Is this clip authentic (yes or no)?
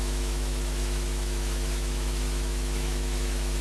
no